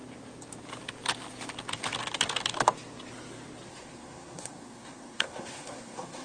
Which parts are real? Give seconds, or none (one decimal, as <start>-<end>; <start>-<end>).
0.0-3.7